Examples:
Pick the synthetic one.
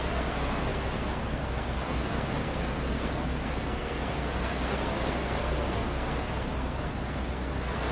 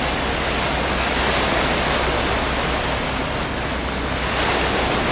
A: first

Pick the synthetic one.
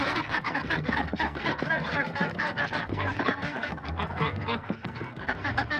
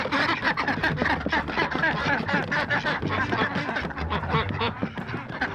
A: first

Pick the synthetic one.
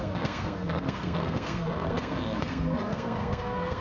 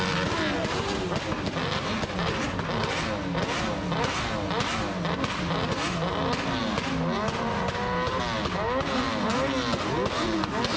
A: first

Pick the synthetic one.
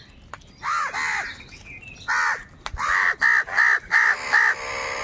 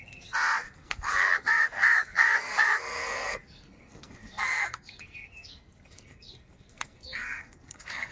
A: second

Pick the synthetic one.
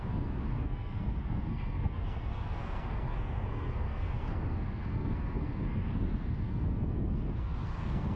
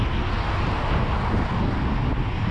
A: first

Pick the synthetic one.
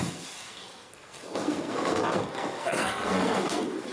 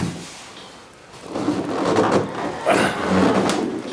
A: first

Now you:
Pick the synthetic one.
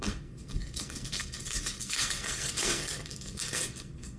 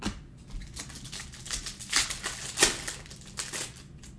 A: first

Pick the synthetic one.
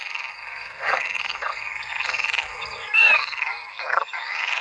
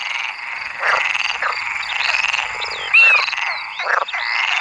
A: first